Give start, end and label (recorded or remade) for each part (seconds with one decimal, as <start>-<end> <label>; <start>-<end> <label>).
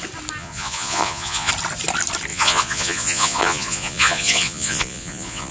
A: 0.0-0.4 recorded; 0.4-1.5 remade; 1.5-2.3 recorded; 2.3-5.5 remade